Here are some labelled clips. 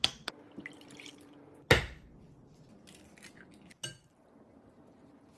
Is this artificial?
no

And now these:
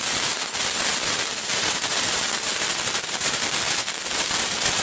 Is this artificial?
no